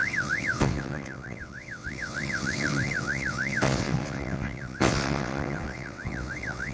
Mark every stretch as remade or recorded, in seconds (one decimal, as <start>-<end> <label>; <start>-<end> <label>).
0.0-6.7 remade